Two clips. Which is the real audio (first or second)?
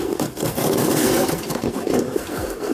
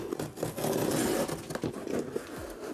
second